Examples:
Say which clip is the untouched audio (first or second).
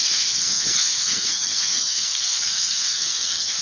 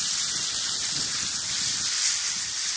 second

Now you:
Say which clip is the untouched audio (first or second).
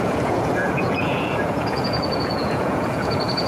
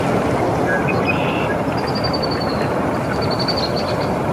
second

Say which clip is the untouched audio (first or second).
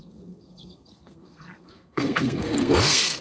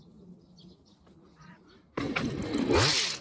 second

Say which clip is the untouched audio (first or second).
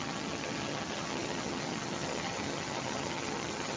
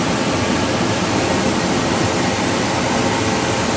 second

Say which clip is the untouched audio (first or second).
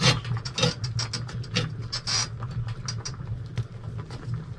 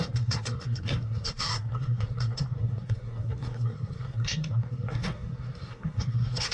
first